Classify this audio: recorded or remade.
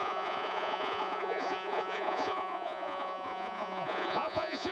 remade